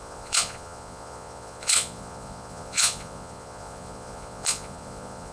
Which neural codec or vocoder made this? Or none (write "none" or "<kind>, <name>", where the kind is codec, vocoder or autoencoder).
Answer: vocoder, Vocos